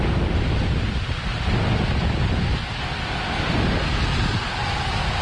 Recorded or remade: recorded